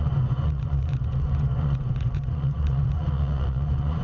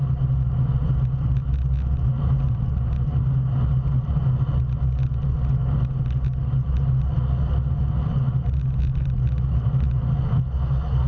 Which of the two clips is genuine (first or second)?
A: second